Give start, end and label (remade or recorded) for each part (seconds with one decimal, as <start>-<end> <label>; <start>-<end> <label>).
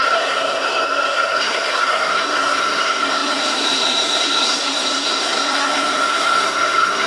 0.0-7.1 remade